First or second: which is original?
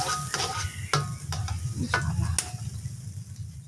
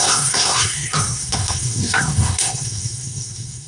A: first